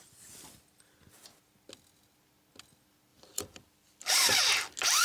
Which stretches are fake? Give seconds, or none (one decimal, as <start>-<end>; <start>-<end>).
3.1-4.4

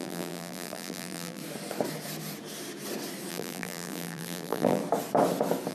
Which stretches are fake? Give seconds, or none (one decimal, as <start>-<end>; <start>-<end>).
0.0-1.4; 3.3-4.8

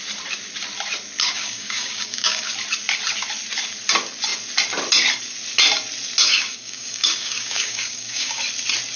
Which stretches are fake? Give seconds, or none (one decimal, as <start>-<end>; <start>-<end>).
1.2-2.5; 6.2-8.4

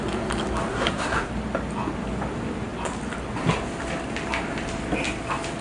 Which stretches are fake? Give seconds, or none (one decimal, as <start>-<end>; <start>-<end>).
0.7-1.3